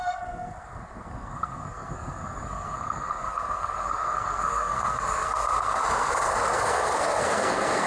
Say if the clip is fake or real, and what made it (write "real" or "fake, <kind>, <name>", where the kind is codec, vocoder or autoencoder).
fake, codec, SNAC